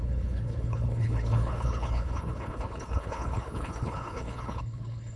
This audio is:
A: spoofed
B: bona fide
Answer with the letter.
A